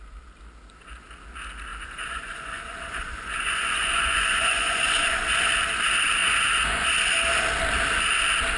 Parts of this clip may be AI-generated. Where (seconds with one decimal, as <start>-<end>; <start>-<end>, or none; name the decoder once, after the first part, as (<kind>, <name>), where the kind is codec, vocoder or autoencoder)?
1.7-5.4 (vocoder, Vocos); 6.2-6.9